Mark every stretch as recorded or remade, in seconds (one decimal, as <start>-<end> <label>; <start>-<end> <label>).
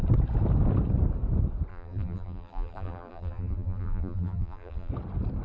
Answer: 0.0-1.7 recorded; 1.7-4.9 remade; 4.9-5.4 recorded